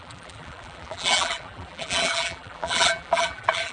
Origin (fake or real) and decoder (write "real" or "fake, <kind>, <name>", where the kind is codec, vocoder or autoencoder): fake, vocoder, BigVGAN v2